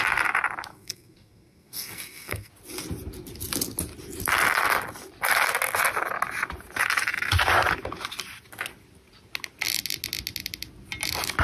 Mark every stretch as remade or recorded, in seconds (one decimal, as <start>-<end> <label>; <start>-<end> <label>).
0.0-0.7 recorded; 0.7-2.5 remade; 2.5-11.4 recorded